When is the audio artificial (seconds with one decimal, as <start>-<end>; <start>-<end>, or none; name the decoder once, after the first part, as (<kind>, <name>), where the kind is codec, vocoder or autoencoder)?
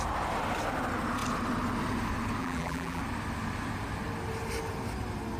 2.4-3.0 (vocoder, BigVGAN v2)